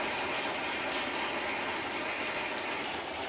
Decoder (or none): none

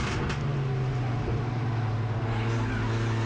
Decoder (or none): none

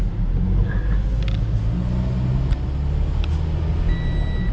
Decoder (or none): none